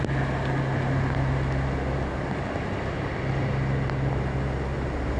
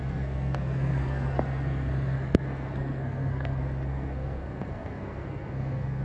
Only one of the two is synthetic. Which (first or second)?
second